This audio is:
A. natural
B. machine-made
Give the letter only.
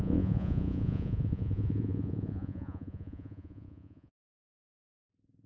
B